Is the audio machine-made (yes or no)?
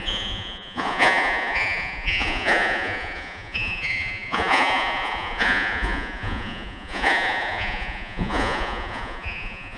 yes